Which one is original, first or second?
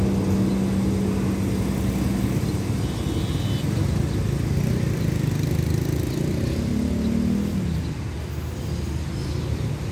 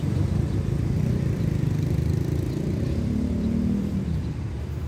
first